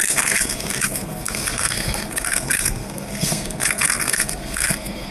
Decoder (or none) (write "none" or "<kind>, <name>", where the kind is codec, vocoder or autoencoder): codec, SNAC